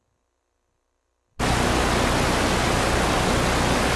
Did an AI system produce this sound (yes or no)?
no